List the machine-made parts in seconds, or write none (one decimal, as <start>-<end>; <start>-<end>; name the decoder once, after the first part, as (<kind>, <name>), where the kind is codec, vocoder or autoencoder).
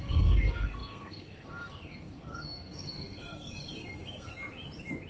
0.0-4.3 (codec, SNAC)